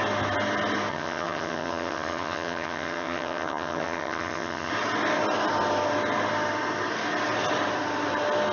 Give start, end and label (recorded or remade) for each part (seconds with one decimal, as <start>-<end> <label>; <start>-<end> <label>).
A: 0.0-0.9 recorded; 0.9-4.7 remade; 4.7-8.5 recorded